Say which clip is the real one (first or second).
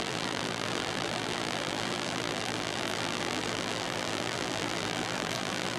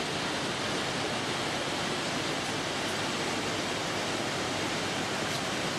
second